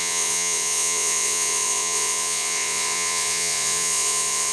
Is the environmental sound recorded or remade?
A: remade